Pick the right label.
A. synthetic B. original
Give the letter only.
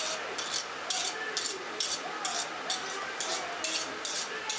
B